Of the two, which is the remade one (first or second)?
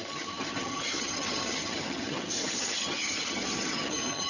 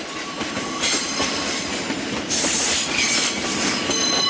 first